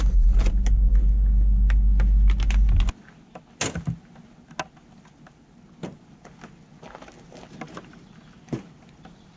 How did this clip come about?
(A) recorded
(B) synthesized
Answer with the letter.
A